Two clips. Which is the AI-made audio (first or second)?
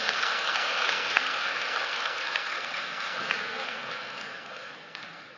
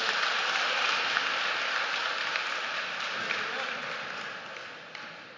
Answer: first